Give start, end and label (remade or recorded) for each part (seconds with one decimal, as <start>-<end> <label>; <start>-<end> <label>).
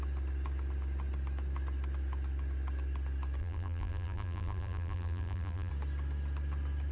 0.0-3.4 recorded; 3.4-5.7 remade; 5.7-6.9 recorded